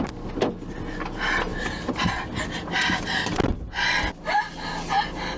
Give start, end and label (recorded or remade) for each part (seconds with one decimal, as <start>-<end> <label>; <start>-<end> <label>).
0.0-5.4 recorded

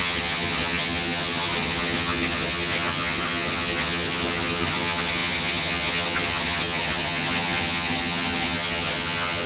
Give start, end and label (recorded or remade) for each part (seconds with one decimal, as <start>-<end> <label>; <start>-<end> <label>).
0.0-9.5 remade

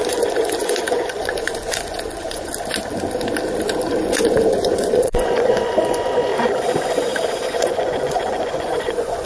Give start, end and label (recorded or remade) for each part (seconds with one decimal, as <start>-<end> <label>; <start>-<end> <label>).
0.0-2.5 remade; 2.5-4.0 recorded; 4.0-6.3 remade; 6.3-7.5 recorded; 7.5-9.3 remade

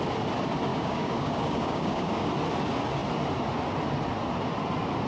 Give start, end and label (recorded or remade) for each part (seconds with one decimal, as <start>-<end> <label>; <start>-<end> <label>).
0.0-0.7 recorded; 0.7-2.3 remade; 2.3-5.1 recorded